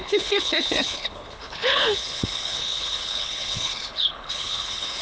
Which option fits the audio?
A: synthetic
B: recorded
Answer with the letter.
A